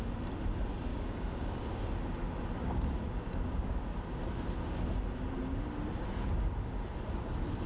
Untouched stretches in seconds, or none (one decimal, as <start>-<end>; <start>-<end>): 0.0-0.9; 1.8-2.6; 3.9-7.7

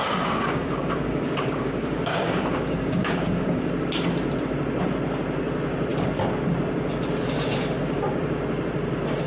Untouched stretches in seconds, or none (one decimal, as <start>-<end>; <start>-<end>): 3.7-9.3